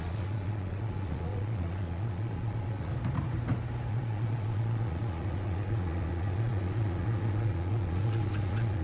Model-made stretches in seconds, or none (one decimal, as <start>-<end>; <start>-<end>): 0.0-2.9; 3.9-8.8